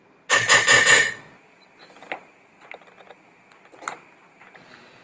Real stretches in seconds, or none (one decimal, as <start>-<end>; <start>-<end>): 0.0-5.0